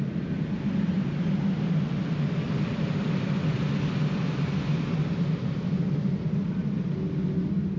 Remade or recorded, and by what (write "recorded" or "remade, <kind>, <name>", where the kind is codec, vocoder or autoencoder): recorded